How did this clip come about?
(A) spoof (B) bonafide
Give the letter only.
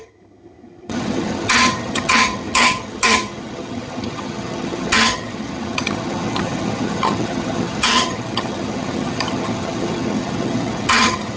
A